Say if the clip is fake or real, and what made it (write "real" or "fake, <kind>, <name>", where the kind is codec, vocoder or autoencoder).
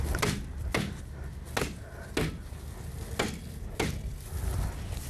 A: real